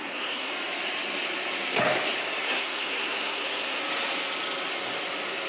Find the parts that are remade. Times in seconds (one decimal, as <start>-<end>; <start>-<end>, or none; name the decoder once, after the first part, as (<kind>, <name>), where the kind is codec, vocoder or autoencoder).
0.0-0.5 (codec, SNAC); 2.4-3.8